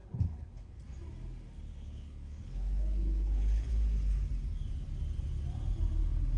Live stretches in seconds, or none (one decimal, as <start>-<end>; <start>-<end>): 0.8-1.7; 3.7-6.4